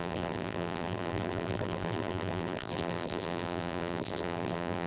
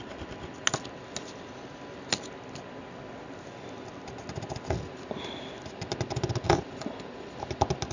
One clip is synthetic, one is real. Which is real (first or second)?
second